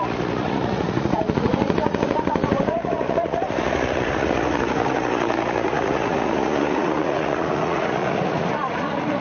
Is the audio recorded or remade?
remade